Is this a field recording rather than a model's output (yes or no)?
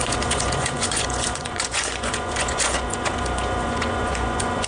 no